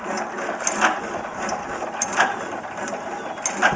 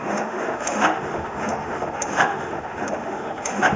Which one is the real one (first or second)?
first